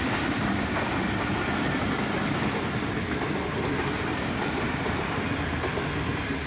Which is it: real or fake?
real